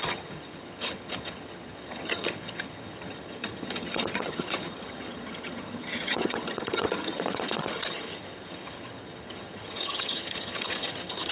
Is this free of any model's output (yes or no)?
no